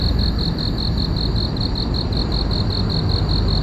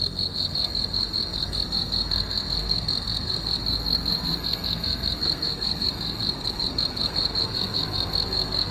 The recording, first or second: first